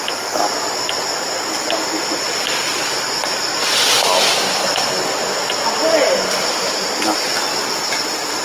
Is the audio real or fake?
real